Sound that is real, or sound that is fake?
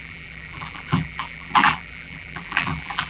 fake